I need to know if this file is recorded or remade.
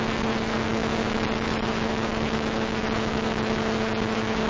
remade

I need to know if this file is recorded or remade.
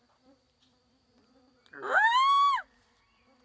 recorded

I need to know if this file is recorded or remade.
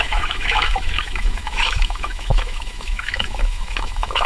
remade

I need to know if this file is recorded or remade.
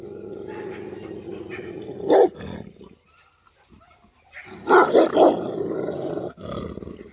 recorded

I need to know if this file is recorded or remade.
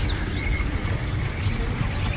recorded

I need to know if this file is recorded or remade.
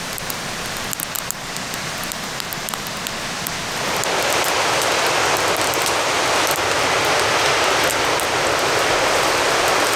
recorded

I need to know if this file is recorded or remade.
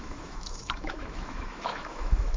remade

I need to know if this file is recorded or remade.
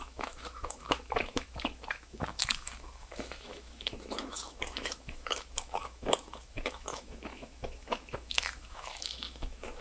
remade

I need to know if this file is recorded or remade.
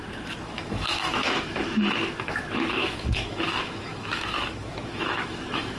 remade